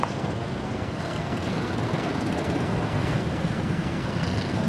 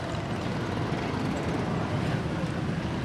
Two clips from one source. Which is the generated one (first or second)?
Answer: first